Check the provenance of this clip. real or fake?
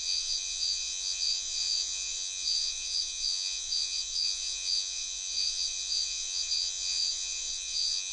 fake